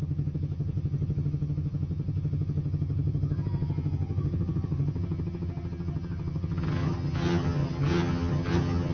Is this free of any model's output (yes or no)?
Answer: no